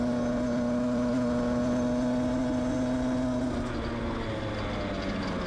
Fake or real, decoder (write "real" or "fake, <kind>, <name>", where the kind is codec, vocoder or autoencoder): real